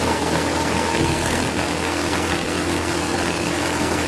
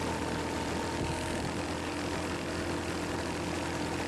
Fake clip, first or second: first